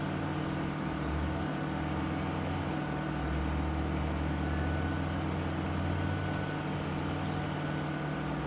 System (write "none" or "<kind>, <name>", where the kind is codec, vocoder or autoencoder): none